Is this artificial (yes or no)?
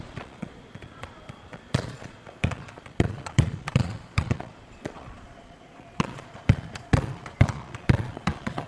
yes